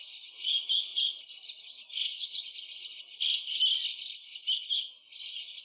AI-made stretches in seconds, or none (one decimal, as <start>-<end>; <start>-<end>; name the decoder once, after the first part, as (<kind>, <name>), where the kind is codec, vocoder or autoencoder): none